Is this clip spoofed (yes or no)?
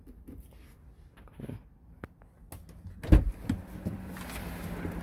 no